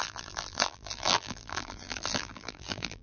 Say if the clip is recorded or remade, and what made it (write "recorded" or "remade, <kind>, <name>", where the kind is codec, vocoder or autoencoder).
remade, vocoder, BigVGAN v2